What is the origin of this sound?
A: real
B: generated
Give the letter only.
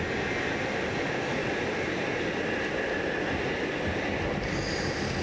A